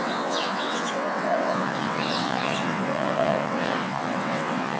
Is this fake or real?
fake